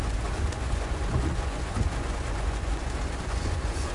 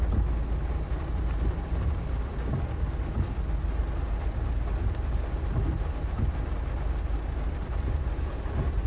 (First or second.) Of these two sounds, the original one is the second